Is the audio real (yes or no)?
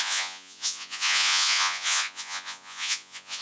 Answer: no